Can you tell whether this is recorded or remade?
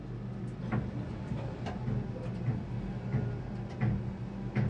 recorded